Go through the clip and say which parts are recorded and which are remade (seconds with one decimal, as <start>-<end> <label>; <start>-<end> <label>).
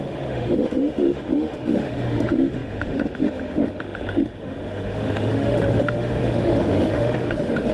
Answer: 0.0-7.7 remade